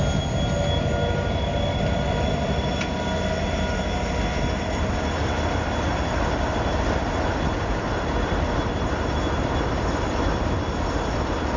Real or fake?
real